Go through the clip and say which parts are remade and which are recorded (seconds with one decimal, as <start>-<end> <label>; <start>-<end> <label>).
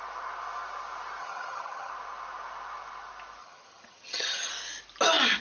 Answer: 0.0-1.2 recorded; 1.2-1.9 remade; 1.9-3.4 recorded; 3.4-4.5 remade; 4.5-5.4 recorded